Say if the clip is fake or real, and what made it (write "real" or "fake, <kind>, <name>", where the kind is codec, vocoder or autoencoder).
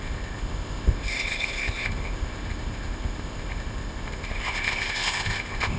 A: fake, codec, ZipCodec